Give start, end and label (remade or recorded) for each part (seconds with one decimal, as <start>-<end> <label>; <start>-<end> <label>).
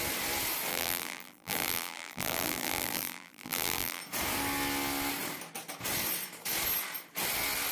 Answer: 0.0-0.7 recorded; 0.7-4.0 remade; 4.0-7.7 recorded